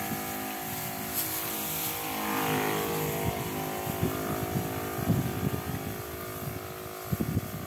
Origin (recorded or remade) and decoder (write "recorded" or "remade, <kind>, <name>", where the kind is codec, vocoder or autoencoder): recorded